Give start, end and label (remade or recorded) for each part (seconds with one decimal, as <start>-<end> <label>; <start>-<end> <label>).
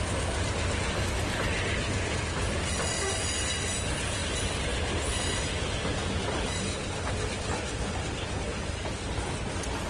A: 0.0-9.9 recorded